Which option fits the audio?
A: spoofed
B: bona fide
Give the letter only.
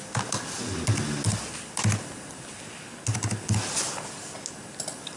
B